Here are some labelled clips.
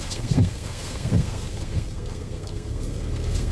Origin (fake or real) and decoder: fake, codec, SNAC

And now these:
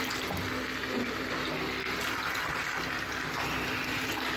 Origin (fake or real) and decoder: real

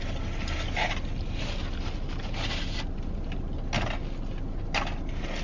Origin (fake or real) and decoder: real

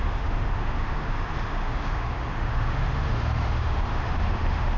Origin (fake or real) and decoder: fake, autoencoder, DAC-VAE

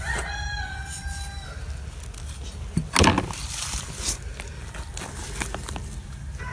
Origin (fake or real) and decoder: real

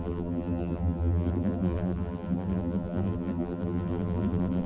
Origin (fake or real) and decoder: fake, vocoder, BigVGAN v2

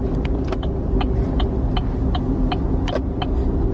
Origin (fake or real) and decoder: real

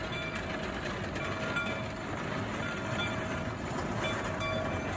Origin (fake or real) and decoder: real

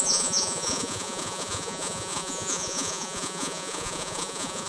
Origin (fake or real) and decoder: fake, vocoder, Vocos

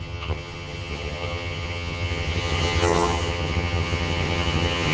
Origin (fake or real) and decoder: fake, vocoder, HiFi-GAN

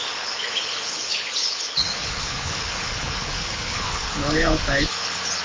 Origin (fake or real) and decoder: fake, codec, HILCodec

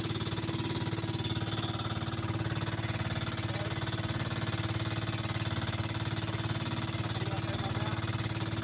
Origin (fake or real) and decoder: real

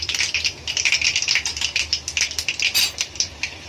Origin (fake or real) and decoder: real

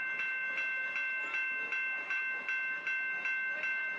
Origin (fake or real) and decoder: real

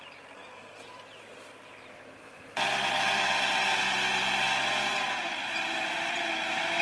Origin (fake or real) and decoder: real